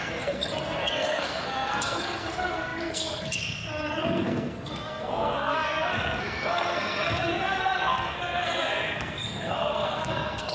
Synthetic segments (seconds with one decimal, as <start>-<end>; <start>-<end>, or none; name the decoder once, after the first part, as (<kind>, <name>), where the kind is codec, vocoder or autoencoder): 0.0-10.5 (codec, SNAC)